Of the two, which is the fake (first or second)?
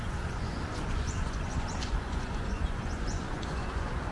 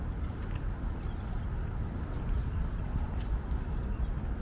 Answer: first